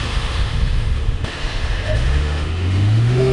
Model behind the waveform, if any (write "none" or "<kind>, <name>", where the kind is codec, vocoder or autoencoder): autoencoder, DAC-VAE